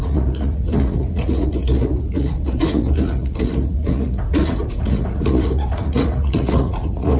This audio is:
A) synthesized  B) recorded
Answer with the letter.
A